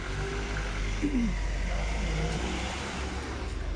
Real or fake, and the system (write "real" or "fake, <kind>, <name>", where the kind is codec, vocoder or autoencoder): real